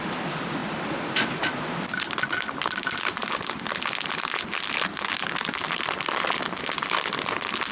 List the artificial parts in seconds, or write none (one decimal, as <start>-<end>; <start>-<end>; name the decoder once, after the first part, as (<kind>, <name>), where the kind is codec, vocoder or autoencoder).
none